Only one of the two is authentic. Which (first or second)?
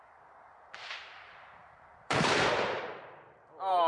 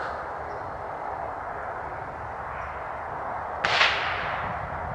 second